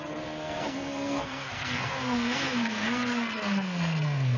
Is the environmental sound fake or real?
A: fake